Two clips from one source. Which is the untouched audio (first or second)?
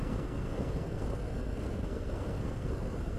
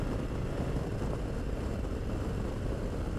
second